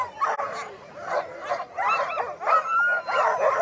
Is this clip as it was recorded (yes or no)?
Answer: yes